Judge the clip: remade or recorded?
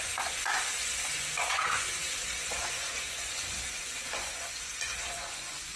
remade